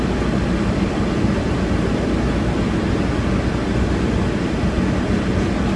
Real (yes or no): yes